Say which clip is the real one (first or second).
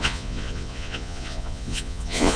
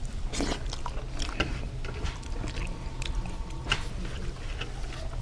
second